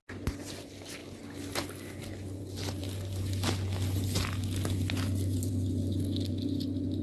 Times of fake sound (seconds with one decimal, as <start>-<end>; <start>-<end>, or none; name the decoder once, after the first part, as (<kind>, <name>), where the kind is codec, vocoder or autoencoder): none